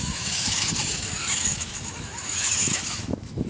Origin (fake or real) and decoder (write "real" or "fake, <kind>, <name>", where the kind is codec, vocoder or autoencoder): fake, autoencoder, DAC-VAE